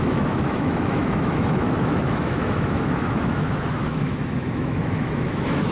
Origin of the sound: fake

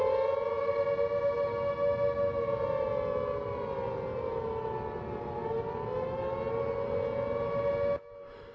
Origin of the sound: real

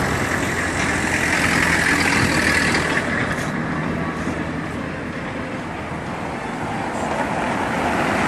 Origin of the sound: real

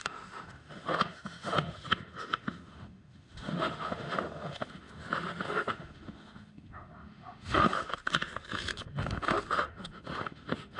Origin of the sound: fake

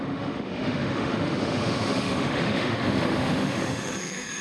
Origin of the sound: fake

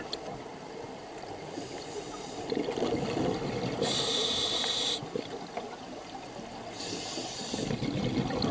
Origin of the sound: real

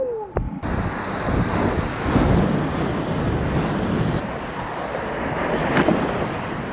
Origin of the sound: real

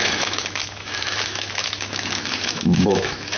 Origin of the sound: fake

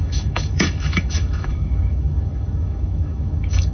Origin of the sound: fake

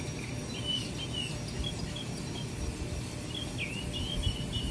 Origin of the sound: real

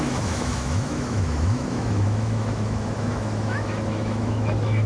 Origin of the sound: fake